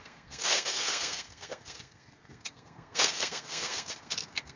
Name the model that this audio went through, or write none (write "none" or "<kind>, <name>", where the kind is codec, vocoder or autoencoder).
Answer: codec, SNAC